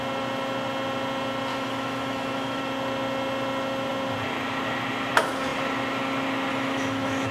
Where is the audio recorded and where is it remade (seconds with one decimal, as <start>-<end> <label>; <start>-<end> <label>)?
0.0-1.5 recorded; 1.5-2.6 remade; 2.6-6.5 recorded; 6.5-7.3 remade